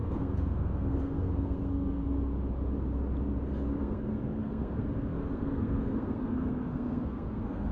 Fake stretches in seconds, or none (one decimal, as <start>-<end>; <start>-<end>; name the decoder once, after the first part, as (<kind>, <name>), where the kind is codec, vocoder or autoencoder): 0.0-2.0 (codec, SNAC); 3.8-7.7